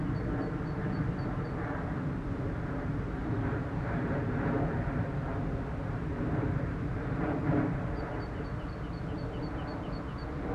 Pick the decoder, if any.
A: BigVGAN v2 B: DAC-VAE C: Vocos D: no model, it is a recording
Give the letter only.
D